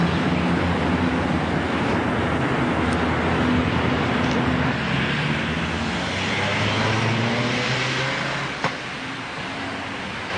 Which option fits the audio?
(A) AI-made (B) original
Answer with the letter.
B